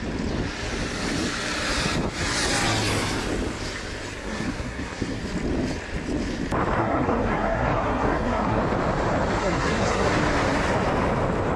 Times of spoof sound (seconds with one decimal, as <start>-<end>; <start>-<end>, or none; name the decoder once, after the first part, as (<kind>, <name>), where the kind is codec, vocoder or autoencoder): 4.2-5.2 (codec, SNAC); 6.8-8.6; 9.4-10.1